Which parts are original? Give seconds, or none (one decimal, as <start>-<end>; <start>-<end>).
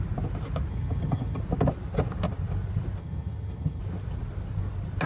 0.0-0.7; 1.4-3.0; 3.8-5.1